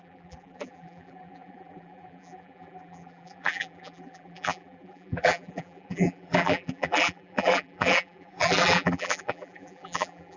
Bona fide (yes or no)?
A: no